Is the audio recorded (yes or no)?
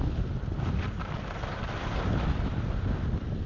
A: yes